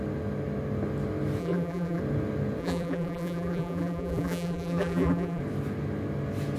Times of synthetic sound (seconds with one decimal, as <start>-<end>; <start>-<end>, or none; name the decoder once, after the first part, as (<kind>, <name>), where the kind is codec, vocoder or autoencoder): 1.4-2.0 (vocoder, BigVGAN v2); 2.6-5.4